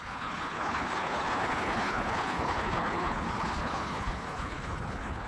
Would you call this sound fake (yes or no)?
yes